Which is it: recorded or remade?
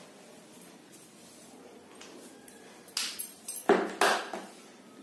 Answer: recorded